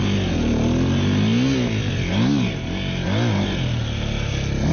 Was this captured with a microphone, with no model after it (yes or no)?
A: yes